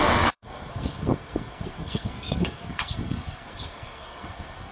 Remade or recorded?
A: remade